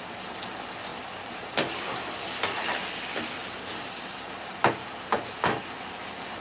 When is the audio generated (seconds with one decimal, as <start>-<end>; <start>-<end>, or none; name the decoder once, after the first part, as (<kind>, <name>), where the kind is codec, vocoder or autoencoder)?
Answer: 0.9-2.1 (vocoder, BigVGAN v2)